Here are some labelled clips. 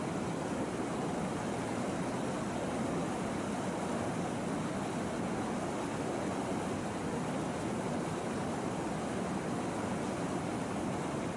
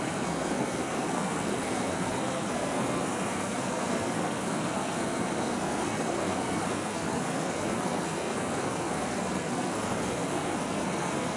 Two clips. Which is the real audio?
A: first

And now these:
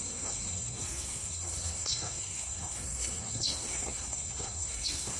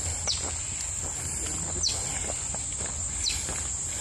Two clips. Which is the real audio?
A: second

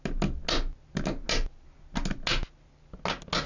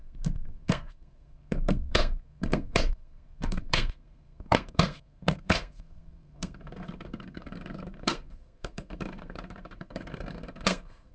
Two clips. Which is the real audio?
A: first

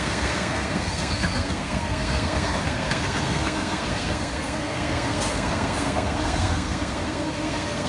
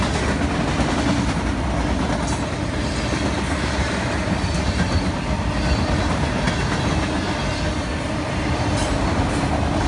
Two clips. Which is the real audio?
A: second